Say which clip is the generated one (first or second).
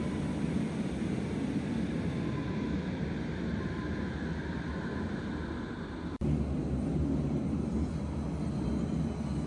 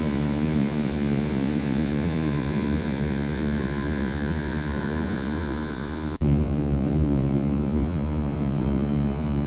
second